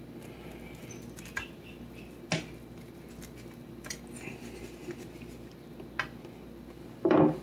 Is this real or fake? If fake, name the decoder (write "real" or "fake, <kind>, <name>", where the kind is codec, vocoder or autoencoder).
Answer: real